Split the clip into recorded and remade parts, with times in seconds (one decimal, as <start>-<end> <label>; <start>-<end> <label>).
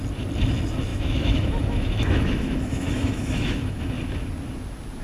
0.0-0.9 recorded; 0.9-3.9 remade; 3.9-5.0 recorded